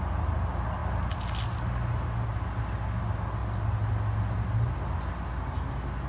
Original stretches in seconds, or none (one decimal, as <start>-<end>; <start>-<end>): 0.0-6.1